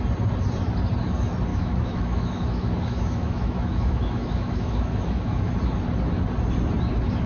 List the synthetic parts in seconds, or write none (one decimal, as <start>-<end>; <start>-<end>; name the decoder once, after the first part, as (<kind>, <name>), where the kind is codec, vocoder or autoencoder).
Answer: 1.5-5.5 (autoencoder, DAC-VAE)